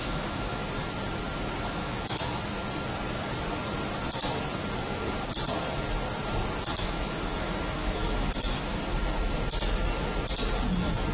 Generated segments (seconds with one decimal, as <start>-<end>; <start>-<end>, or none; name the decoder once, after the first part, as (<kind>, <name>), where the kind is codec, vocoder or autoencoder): 0.0-0.9 (autoencoder, DAC-VAE); 1.8-2.5; 6.7-8.8